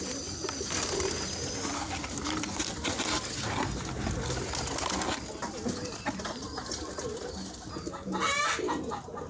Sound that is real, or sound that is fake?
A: real